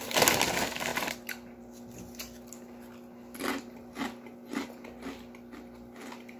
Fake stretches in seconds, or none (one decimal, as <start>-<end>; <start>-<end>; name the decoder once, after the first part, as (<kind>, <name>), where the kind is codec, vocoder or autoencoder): none